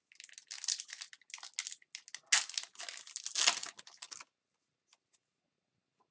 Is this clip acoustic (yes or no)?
yes